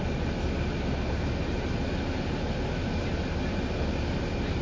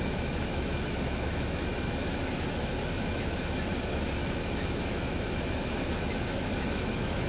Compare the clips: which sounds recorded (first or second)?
first